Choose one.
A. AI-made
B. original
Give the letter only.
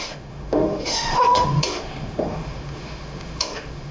A